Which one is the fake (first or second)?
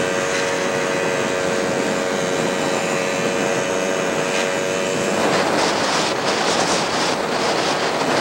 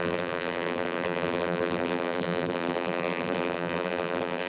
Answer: second